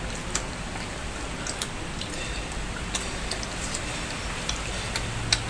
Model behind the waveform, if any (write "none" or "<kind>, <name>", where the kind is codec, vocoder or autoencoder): none